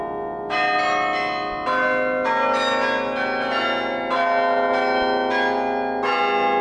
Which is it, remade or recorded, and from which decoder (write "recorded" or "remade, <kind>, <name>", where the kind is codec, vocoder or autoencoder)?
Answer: recorded